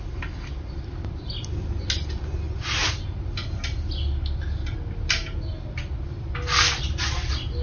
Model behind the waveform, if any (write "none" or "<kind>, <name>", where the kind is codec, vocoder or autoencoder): none